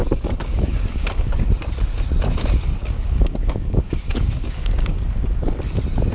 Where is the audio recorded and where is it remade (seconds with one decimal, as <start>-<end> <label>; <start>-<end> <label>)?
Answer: 0.0-1.1 remade; 1.1-2.8 recorded; 2.8-5.0 remade; 5.0-6.1 recorded